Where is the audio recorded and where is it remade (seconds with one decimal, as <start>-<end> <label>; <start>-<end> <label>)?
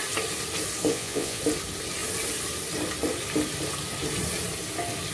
0.0-0.9 recorded; 0.9-1.4 remade; 1.4-5.1 recorded